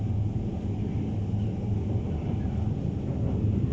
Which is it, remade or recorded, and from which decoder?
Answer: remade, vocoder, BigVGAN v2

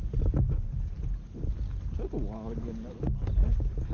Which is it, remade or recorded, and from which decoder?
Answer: recorded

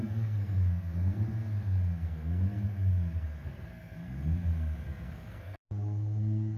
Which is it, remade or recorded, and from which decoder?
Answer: remade, codec, SNAC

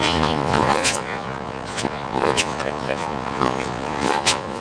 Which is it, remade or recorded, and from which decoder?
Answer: remade, vocoder, Vocos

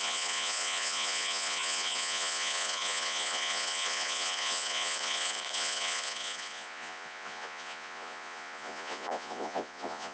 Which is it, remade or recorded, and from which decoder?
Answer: remade, vocoder, Vocos